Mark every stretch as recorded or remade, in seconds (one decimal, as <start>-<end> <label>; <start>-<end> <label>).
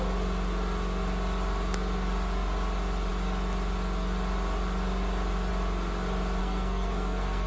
0.0-6.4 recorded; 6.4-7.5 remade